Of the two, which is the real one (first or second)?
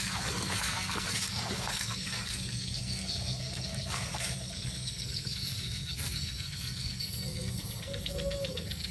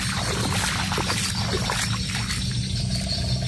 second